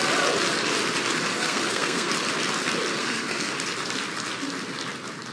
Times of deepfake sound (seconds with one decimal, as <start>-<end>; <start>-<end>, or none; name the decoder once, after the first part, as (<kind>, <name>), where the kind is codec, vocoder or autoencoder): 1.3-2.1 (codec, SNAC); 3.0-3.5